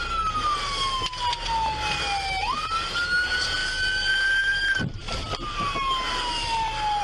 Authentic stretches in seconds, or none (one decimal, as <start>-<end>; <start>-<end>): 0.0-7.0